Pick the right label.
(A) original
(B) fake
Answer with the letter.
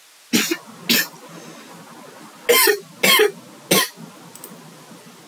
A